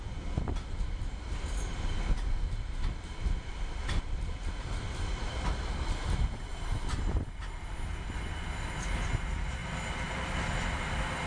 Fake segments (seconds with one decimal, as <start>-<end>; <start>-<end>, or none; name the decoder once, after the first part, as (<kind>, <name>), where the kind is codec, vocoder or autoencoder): 9.6-10.4 (vocoder, BigVGAN v2)